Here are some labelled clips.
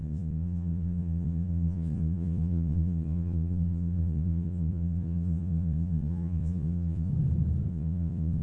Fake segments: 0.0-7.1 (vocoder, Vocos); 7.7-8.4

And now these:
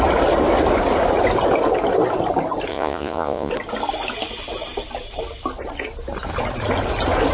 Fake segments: 2.7-3.5 (vocoder, Vocos)

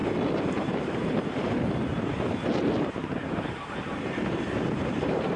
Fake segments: 0.5-5.4 (vocoder, BigVGAN v2)